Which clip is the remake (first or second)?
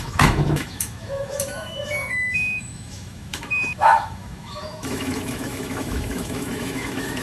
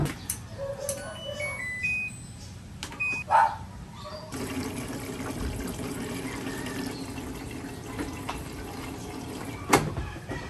first